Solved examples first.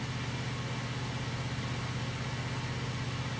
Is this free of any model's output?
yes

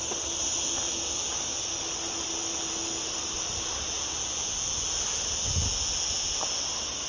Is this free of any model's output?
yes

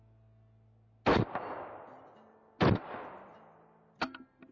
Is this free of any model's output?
yes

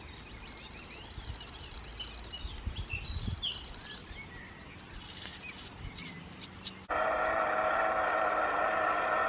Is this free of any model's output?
yes